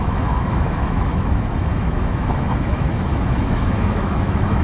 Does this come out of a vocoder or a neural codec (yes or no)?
yes